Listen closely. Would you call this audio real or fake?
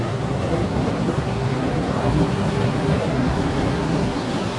fake